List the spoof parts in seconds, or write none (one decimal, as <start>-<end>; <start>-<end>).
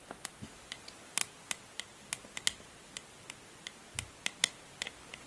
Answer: none